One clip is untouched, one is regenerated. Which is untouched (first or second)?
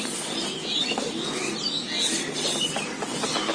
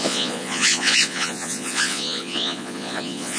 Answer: first